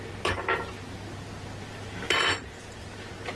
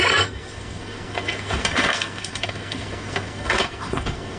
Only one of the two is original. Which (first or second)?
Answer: first